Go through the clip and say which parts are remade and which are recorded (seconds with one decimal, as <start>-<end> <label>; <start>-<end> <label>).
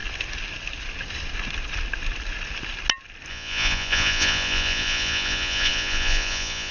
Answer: 0.0-3.3 recorded; 3.3-6.7 remade